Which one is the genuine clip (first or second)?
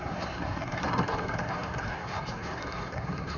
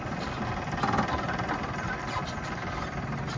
second